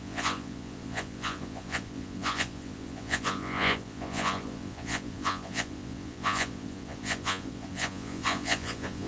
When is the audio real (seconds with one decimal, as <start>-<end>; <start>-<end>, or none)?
none